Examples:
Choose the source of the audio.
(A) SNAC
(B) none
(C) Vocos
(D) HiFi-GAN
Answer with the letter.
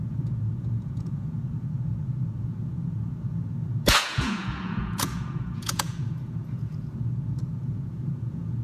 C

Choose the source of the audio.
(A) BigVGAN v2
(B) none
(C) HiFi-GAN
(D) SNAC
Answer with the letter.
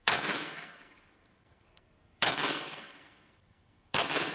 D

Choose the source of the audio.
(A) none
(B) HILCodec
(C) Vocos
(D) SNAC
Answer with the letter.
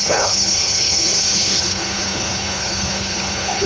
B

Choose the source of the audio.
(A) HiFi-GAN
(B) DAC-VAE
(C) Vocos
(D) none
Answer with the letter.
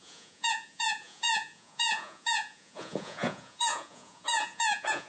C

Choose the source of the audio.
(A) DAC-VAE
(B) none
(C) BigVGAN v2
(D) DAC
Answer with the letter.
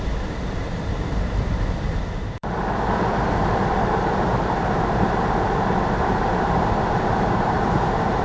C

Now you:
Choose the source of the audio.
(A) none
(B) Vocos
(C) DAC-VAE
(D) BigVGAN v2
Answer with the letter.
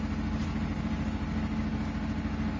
A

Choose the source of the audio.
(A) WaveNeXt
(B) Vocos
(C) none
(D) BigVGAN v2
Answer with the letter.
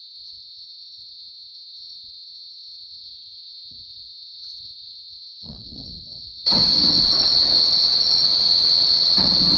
A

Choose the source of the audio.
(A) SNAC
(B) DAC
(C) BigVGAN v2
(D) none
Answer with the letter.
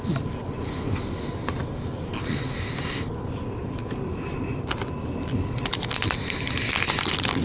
D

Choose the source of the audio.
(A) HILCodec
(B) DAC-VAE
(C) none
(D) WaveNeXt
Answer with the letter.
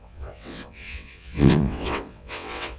D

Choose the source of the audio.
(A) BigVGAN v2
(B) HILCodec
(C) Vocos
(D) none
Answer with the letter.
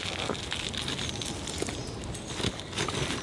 D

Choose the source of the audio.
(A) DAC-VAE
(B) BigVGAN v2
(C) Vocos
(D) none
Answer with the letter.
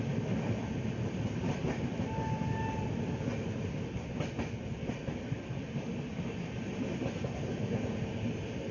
D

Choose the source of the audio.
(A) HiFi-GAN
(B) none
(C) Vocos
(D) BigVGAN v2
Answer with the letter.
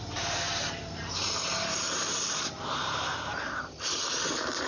D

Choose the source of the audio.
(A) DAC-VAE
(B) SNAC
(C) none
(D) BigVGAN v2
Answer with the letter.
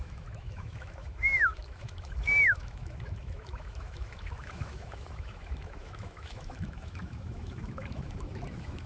A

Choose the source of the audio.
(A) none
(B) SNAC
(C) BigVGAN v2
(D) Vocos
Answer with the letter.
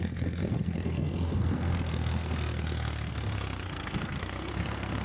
B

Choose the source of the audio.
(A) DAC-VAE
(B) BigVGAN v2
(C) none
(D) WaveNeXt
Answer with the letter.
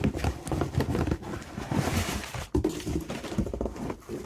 C